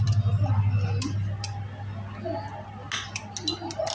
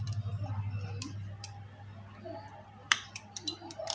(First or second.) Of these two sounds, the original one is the first